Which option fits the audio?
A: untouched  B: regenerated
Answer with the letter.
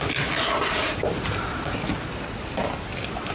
A